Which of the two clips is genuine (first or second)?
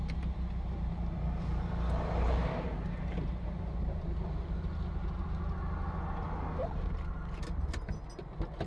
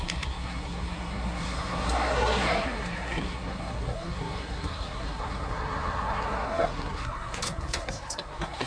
first